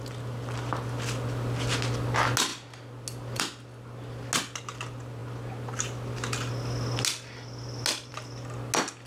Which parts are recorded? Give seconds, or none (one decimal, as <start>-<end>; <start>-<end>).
0.0-9.1